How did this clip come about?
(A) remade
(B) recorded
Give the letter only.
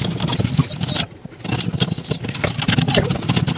B